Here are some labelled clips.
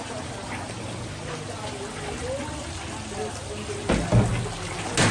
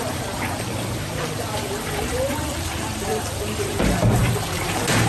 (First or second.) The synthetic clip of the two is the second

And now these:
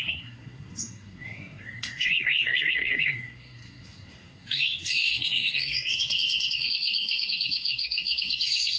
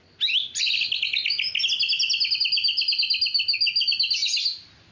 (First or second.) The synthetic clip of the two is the first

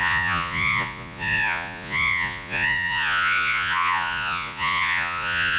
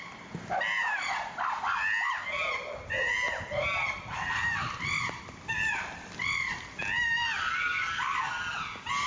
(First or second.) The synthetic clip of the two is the first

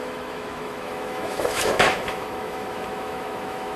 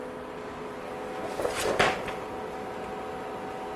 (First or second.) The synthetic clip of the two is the first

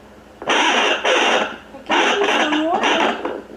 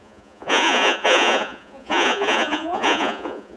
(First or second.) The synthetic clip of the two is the second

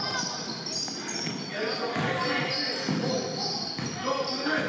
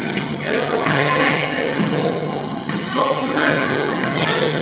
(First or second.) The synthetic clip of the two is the second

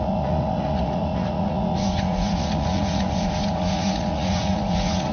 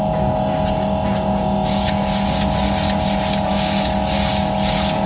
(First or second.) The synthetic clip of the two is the first